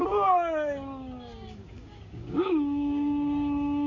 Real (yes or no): no